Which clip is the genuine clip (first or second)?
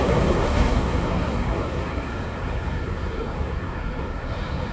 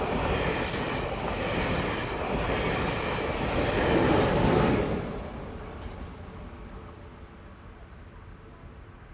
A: second